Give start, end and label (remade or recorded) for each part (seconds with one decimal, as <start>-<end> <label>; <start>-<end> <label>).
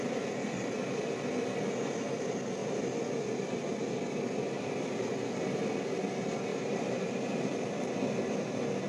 0.0-6.5 recorded; 6.5-7.9 remade; 7.9-8.9 recorded